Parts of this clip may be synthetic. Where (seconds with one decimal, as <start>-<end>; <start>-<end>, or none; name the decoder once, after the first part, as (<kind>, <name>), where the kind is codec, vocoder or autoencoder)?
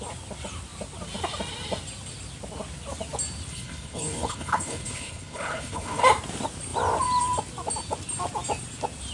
3.5-6.0 (codec, HILCodec)